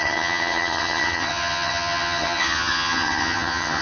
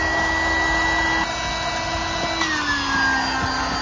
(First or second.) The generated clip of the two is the first